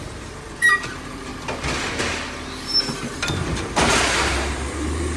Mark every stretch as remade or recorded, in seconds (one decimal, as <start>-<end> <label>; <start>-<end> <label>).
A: 0.0-1.3 remade; 1.3-2.8 recorded; 2.8-5.2 remade